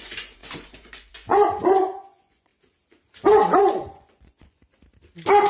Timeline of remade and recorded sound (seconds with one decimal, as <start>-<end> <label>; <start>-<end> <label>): 0.0-2.5 remade; 2.5-3.7 recorded; 3.7-4.6 remade; 4.6-5.5 recorded